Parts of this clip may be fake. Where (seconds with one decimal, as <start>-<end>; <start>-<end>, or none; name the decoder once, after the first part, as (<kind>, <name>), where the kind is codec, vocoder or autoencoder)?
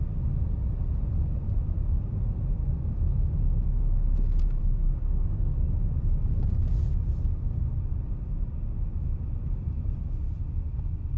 4.6-5.7 (codec, DAC)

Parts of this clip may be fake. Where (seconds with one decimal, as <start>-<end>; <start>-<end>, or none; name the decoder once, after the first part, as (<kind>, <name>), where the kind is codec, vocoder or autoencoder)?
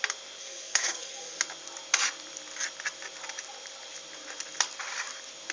0.4-1.4 (codec, SNAC)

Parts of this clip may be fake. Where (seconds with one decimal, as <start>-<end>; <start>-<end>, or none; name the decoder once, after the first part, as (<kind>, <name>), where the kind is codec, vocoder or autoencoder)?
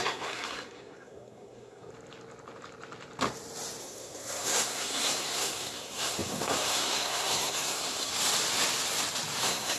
0.0-1.9 (codec, SNAC); 3.8-8.1; 9.4-9.8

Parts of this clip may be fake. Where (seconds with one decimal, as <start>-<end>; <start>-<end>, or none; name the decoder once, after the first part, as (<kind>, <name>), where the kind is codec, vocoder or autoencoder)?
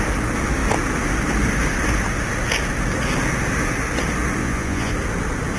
4.4-4.9 (vocoder, Vocos)